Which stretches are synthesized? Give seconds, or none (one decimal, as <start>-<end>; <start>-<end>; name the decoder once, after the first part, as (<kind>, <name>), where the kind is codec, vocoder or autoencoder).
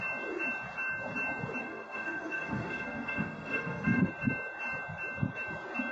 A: 1.6-4.1 (codec, SNAC)